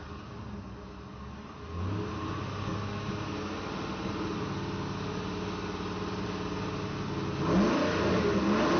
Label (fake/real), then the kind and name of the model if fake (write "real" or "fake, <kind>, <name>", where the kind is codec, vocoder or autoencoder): real